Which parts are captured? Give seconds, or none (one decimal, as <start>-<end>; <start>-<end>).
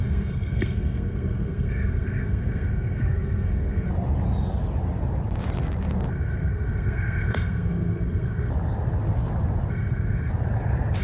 3.9-6.1; 8.5-9.7; 10.3-11.0